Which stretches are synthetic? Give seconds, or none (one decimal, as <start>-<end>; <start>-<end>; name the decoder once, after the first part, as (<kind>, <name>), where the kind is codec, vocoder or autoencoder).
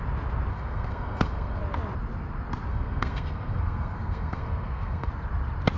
0.5-1.6 (codec, SNAC); 2.7-5.1